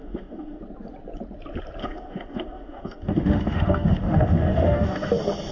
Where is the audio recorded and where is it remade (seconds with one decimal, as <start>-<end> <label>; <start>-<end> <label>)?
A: 0.0-0.6 remade; 0.6-1.8 recorded; 1.8-5.1 remade; 5.1-5.5 recorded